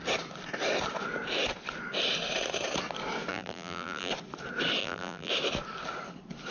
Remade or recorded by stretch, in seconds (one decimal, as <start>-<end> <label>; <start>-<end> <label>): 0.0-3.3 recorded; 3.3-4.1 remade; 4.1-4.8 recorded; 4.8-5.3 remade; 5.3-6.5 recorded